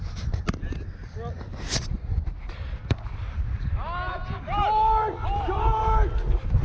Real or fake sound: real